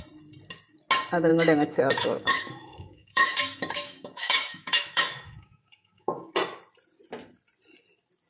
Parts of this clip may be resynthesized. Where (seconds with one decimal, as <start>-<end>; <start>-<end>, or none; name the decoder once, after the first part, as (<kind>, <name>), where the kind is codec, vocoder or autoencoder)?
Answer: 1.3-6.3 (autoencoder, DAC-VAE)